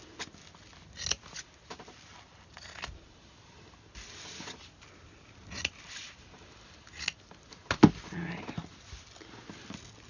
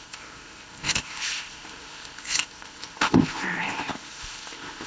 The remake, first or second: second